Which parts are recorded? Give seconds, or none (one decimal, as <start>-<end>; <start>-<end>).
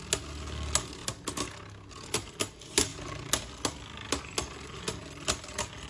0.0-5.9